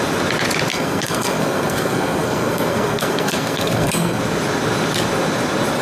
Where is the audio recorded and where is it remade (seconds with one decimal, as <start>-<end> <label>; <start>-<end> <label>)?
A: 0.0-0.7 recorded; 0.7-4.2 remade; 4.2-5.8 recorded